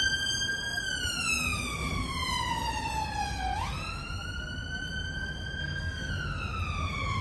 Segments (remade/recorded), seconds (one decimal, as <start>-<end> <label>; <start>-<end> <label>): 0.0-5.6 recorded; 5.6-6.1 remade; 6.1-7.2 recorded